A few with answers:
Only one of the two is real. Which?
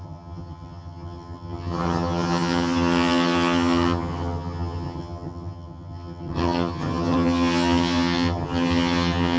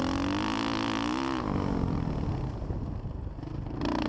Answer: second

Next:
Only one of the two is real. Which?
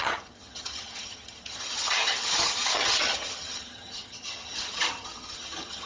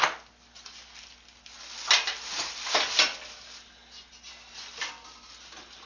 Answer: second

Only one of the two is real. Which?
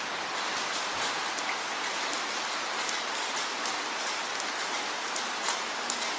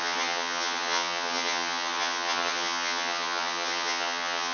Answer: first